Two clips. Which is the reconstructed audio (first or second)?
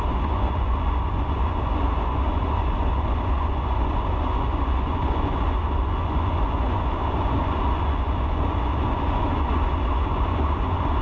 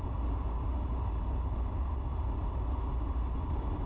first